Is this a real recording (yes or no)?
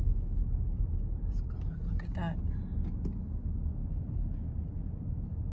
yes